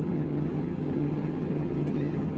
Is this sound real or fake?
fake